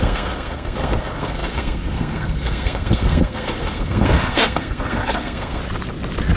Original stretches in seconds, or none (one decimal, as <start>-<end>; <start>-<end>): 5.6-6.4